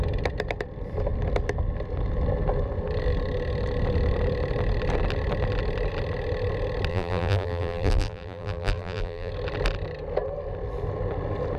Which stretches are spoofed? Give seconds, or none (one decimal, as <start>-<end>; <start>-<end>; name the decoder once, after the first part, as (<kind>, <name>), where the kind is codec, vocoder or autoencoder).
6.9-9.3 (vocoder, BigVGAN v2)